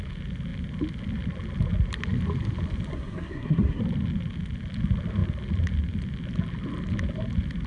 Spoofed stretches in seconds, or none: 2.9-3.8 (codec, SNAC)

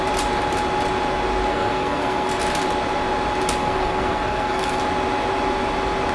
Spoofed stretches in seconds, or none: 1.5-2.3 (codec, SNAC); 3.6-4.8

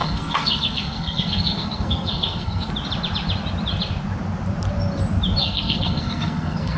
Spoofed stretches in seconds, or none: 0.0-2.7 (codec, SNAC); 5.4-6.8

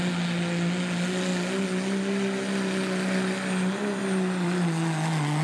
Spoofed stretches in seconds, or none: none

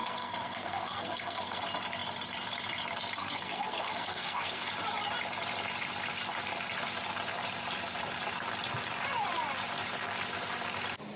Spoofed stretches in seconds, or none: 0.0-1.6 (codec, SNAC); 3.2-4.7

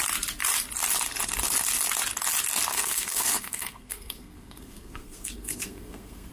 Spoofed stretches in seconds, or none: 2.7-6.3 (codec, SNAC)

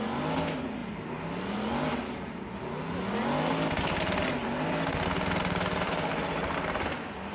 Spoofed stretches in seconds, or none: none